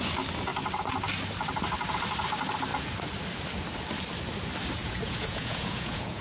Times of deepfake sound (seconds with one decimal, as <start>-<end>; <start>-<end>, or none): 4.8-6.2